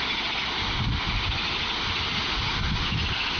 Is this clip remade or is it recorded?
recorded